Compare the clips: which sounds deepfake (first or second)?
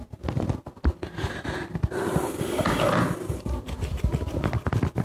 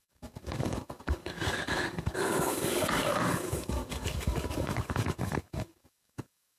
second